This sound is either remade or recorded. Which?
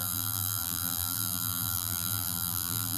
remade